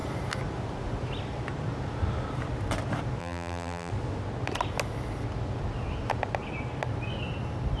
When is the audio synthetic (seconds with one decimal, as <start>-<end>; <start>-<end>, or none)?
3.2-3.9